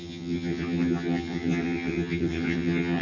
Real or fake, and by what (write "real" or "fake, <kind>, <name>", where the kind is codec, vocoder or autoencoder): fake, vocoder, HiFi-GAN